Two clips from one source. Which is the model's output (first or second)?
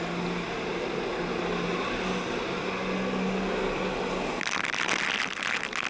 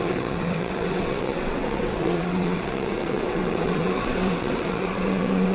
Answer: second